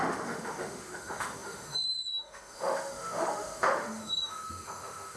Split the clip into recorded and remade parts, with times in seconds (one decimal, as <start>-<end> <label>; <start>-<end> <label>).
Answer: 0.0-5.2 remade